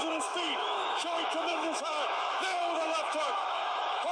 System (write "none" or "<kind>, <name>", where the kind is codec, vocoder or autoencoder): autoencoder, DAC-VAE